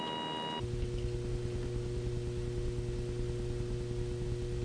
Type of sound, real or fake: real